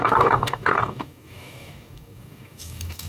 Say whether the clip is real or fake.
fake